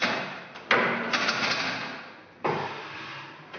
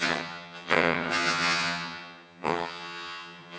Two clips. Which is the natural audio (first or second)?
first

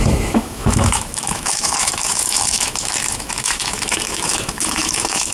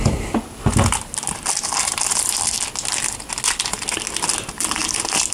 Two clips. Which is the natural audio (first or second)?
second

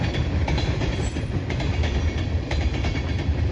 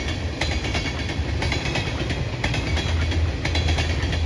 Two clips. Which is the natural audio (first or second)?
second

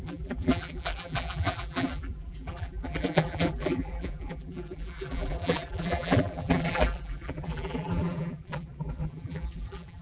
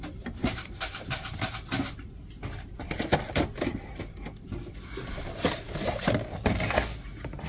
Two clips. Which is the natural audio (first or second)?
second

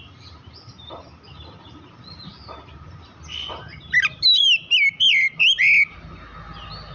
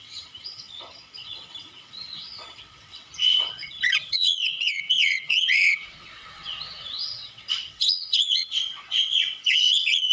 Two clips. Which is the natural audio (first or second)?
first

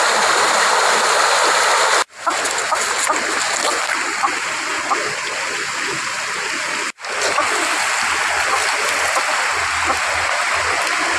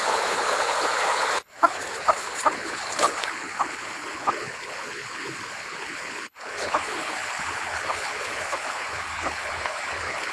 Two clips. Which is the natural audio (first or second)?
first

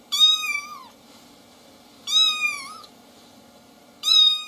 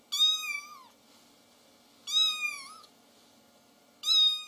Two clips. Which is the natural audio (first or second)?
second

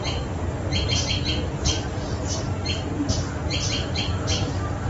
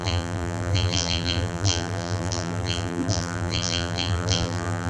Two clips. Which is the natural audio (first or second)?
first